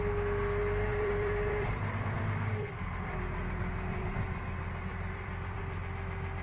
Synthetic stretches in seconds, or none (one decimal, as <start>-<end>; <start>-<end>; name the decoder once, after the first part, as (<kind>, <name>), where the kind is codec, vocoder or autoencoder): 0.6-4.4 (vocoder, BigVGAN v2); 4.9-5.6